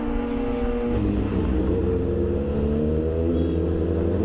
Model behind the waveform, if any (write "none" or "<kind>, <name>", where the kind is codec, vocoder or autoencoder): none